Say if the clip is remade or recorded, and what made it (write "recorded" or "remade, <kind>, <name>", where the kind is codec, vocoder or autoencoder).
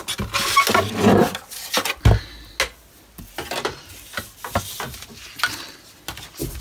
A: recorded